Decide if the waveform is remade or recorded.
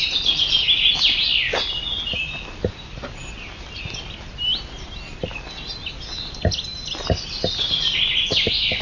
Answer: recorded